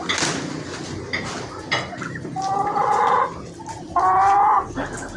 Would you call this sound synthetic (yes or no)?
no